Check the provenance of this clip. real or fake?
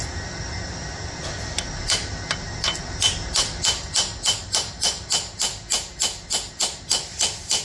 real